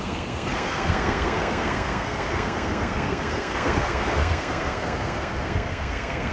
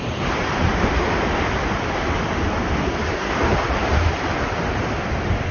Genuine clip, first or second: second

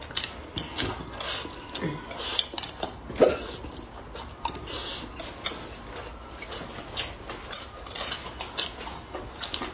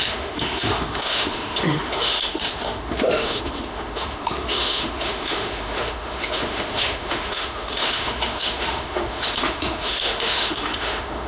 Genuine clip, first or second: first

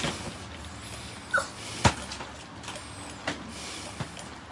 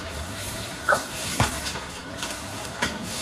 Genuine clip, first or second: first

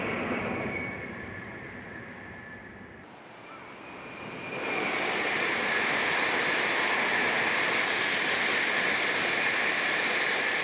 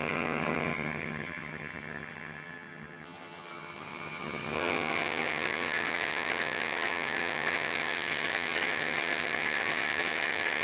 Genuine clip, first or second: first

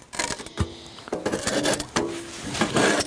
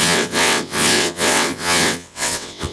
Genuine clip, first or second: first